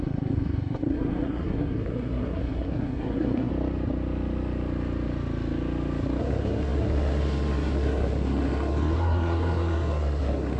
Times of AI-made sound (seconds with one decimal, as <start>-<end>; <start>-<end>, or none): 0.0-3.5; 6.2-10.6